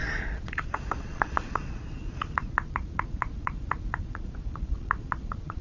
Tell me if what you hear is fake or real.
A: fake